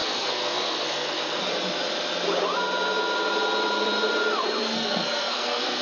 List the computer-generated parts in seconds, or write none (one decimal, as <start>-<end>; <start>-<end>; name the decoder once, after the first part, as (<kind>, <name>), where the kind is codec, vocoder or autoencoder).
0.0-1.5 (codec, SNAC); 4.6-5.8